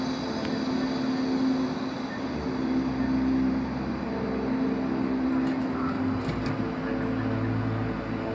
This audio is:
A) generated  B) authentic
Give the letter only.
B